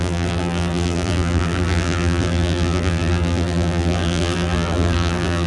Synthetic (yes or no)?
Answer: yes